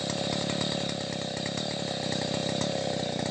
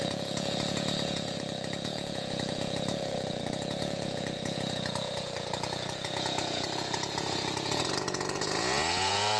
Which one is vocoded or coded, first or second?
second